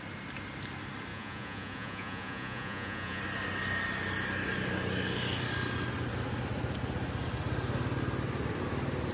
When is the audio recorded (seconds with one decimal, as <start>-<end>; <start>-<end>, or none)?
0.0-1.1; 3.2-9.1